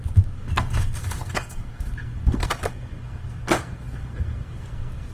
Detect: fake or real fake